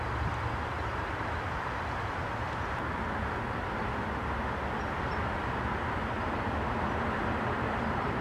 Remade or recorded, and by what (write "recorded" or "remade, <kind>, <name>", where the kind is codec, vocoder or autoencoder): recorded